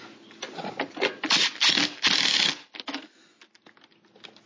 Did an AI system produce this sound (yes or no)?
no